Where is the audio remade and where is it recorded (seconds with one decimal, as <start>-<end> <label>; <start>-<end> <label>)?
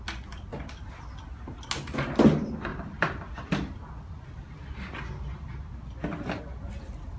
0.0-7.2 recorded